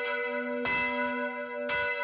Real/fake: real